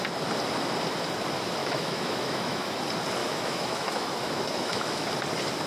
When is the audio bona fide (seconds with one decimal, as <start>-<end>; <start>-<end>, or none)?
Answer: 0.0-1.6; 2.8-3.2; 5.1-5.7